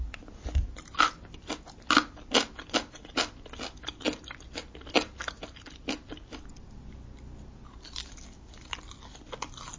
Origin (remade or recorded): recorded